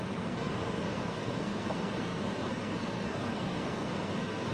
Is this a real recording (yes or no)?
no